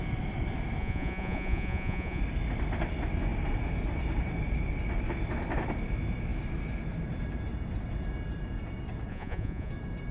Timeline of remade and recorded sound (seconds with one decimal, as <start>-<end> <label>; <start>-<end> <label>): 0.0-0.8 recorded; 0.8-2.2 remade; 2.2-9.1 recorded; 9.1-9.7 remade; 9.7-10.1 recorded